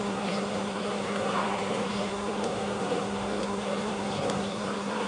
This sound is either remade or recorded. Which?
remade